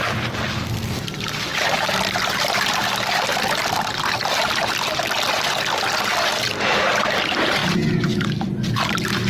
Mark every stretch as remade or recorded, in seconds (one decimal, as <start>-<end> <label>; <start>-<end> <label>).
0.0-9.3 recorded